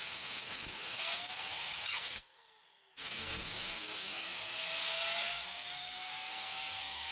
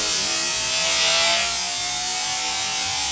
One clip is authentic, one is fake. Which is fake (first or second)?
first